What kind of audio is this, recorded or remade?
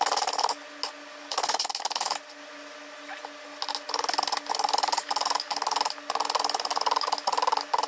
recorded